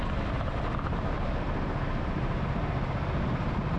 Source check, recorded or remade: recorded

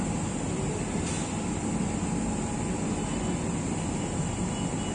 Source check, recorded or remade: recorded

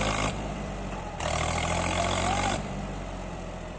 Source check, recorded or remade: remade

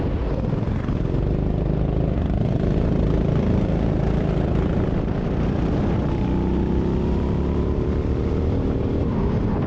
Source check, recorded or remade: remade